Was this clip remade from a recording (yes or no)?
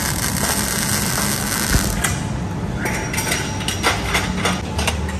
no